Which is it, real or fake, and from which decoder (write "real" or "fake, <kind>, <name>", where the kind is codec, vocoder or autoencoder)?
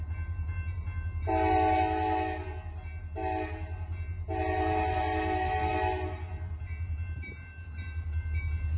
real